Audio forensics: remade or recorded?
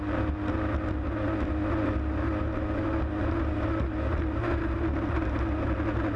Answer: recorded